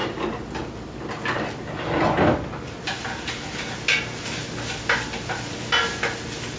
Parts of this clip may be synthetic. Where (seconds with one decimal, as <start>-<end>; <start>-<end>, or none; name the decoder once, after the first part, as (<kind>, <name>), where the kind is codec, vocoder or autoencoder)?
none